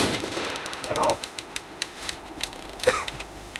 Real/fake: fake